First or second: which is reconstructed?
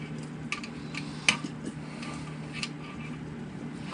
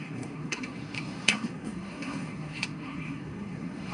second